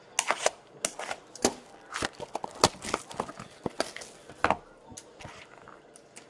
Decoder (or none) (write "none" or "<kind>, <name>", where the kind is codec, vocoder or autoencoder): none